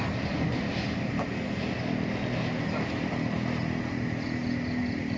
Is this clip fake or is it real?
real